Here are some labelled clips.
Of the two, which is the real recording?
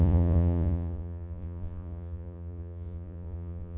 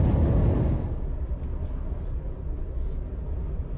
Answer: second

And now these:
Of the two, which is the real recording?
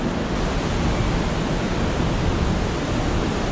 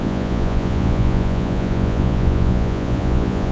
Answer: first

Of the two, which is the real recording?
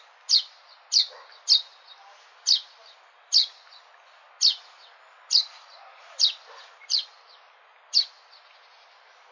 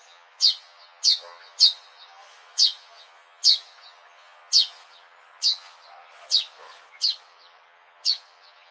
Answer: first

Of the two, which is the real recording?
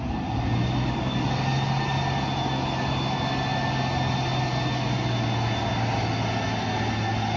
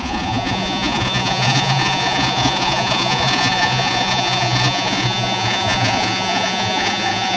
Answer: first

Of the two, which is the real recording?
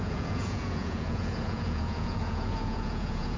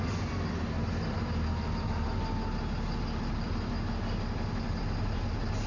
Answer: second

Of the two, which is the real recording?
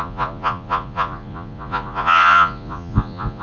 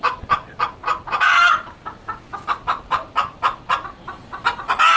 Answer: second